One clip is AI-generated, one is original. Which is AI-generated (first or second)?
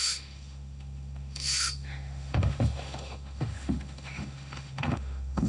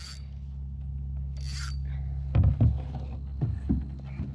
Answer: first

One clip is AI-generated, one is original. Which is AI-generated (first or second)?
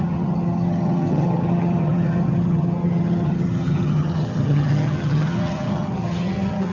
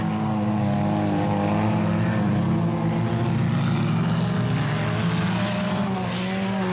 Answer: first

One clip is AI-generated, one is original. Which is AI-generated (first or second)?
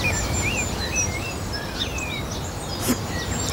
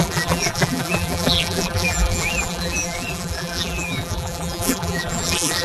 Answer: second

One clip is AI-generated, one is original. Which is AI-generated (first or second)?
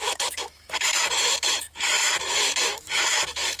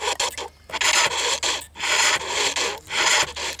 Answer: first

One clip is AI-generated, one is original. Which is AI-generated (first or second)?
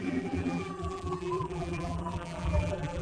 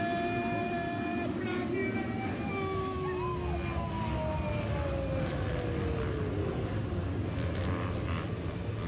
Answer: first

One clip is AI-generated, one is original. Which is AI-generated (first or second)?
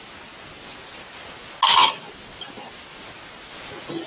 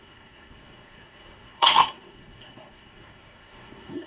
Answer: second